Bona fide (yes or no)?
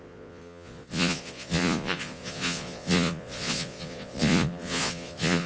no